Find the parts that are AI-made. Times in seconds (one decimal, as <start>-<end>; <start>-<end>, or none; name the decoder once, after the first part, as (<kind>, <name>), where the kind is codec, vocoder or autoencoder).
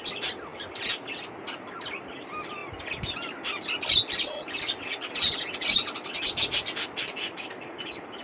none